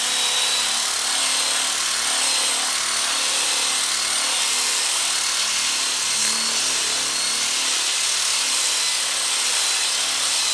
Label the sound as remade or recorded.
recorded